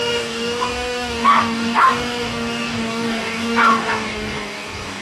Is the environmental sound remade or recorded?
remade